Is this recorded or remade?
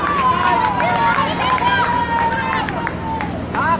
recorded